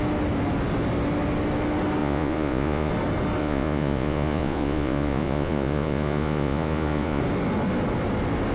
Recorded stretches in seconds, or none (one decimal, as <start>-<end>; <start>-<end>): 0.0-2.0; 2.9-3.4; 7.2-8.5